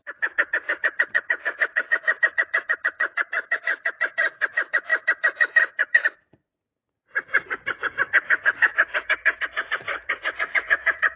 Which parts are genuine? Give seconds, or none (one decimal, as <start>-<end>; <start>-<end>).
none